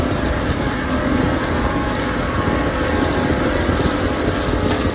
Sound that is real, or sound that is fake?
real